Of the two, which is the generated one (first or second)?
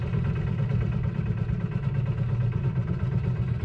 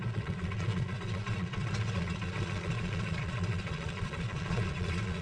second